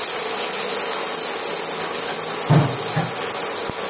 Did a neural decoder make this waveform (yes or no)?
no